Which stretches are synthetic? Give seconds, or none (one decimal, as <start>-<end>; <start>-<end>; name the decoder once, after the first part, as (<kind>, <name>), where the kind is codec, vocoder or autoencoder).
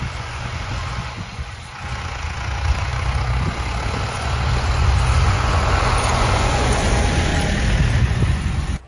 0.0-7.3 (vocoder, Vocos); 8.0-8.9